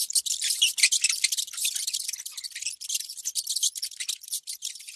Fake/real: fake